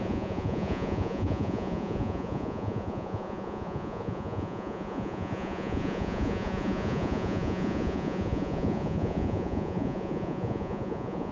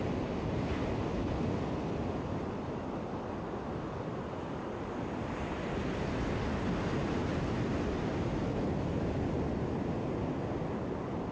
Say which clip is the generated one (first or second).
first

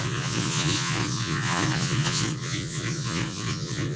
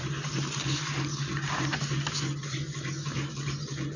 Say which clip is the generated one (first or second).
first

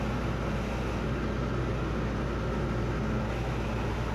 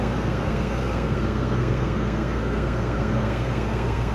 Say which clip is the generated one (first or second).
second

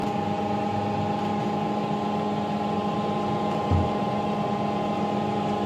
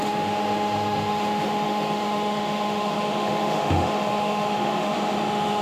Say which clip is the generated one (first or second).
second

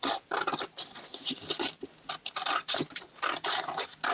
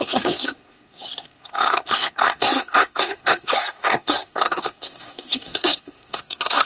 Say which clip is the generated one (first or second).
second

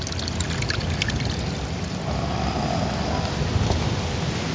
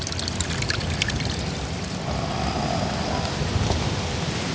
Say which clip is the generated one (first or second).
second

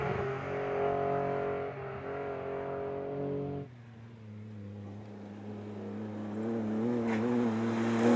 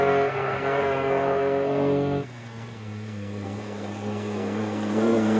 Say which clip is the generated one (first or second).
second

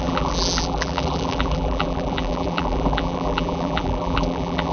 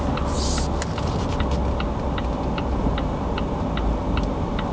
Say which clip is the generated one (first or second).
first